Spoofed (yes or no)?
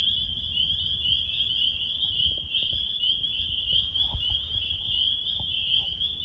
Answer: no